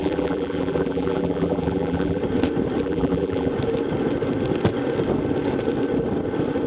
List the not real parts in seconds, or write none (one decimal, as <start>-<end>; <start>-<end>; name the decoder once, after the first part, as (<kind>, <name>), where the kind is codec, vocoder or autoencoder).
0.0-2.2 (vocoder, BigVGAN v2); 2.8-3.5